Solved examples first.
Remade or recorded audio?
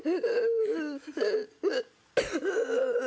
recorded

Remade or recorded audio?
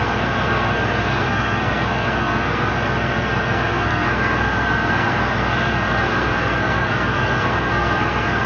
remade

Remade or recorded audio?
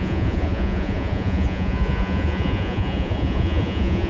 remade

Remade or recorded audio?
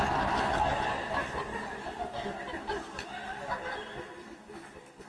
recorded